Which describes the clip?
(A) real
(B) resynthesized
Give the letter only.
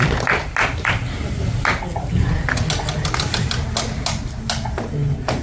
A